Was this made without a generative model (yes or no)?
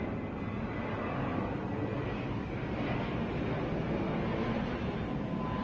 yes